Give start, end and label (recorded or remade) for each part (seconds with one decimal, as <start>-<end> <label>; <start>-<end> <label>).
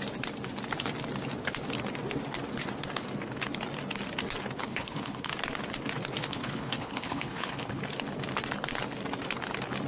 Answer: 0.0-4.6 recorded; 4.6-5.3 remade; 5.3-6.2 recorded; 6.2-7.8 remade; 7.8-9.9 recorded